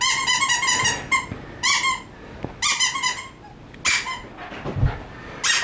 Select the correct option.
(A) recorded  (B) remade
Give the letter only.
A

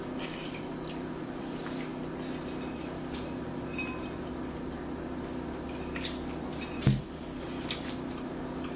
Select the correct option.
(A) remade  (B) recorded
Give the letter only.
B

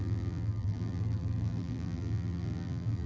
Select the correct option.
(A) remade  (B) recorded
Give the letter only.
A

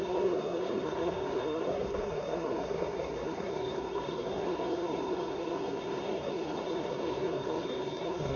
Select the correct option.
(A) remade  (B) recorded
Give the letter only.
A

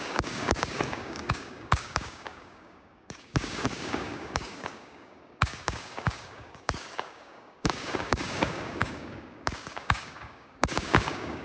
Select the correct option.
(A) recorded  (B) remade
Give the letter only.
B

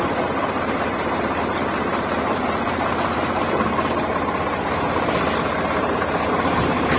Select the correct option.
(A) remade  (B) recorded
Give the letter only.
A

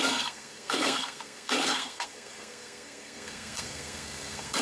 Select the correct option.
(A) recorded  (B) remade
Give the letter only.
B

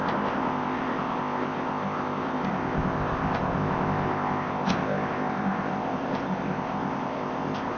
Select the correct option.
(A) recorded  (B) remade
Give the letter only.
B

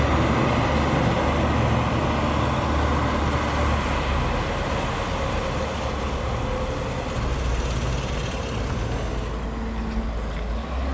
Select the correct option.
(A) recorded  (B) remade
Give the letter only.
A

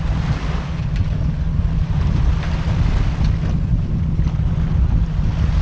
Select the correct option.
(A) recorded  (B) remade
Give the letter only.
A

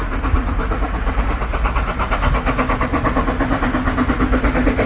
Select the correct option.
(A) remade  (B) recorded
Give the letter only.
B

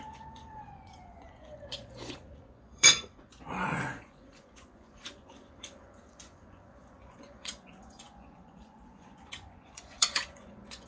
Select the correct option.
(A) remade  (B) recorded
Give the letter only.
A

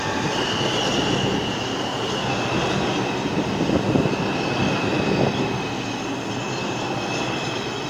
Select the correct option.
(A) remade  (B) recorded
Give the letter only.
B